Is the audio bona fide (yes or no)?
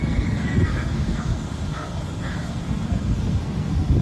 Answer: no